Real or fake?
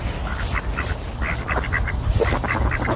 real